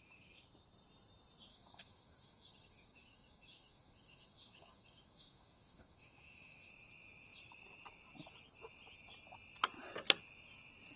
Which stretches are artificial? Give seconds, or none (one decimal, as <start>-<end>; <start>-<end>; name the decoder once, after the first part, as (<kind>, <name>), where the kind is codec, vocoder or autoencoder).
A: 1.5-6.7 (autoencoder, DAC-VAE)